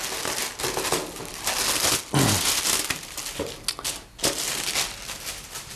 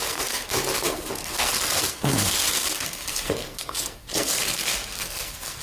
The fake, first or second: second